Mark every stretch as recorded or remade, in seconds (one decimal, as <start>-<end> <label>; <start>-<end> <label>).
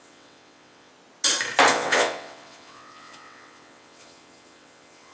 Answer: 0.0-0.9 remade; 0.9-1.7 recorded; 1.7-5.1 remade